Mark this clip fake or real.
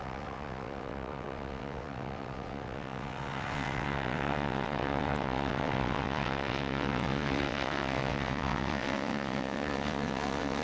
fake